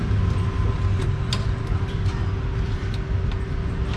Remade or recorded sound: recorded